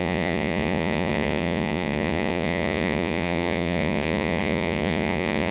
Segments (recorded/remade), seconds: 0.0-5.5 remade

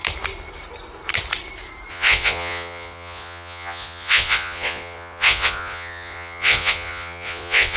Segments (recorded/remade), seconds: 0.0-1.9 recorded; 1.9-7.8 remade

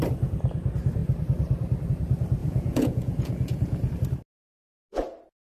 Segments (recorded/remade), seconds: 0.0-2.4 recorded; 2.4-3.9 remade; 3.9-5.5 recorded

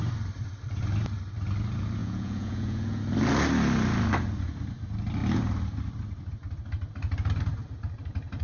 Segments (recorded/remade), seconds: 0.0-2.0 recorded; 2.0-3.0 remade; 3.0-8.4 recorded

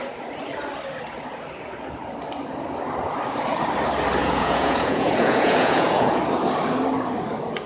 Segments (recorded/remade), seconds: 0.0-4.2 recorded; 4.2-6.2 remade; 6.2-7.7 recorded

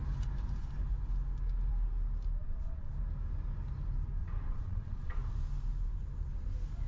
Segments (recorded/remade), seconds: 0.0-2.4 recorded; 2.4-2.9 remade; 2.9-4.2 recorded; 4.2-5.2 remade; 5.2-6.9 recorded